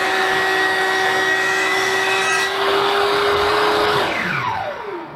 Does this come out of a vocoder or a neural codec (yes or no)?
yes